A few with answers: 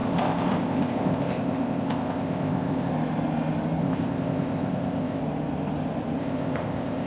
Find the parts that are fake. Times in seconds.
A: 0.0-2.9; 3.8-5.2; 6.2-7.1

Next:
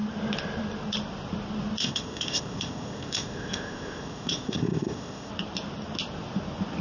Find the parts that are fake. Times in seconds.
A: 1.8-5.3

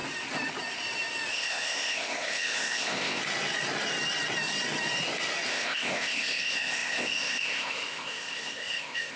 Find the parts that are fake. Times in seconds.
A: 1.3-3.2; 5.5-9.2